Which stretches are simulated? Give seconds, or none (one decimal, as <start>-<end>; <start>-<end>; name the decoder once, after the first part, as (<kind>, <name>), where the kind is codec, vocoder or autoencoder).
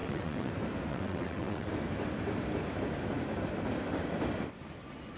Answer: 0.0-0.5 (vocoder, WaveNeXt); 0.9-1.7